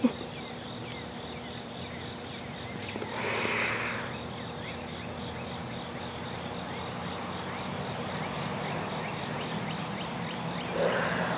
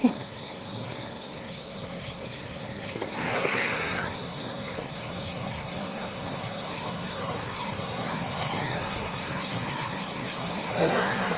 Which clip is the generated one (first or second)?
second